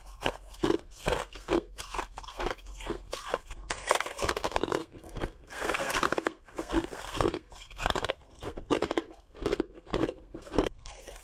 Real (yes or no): no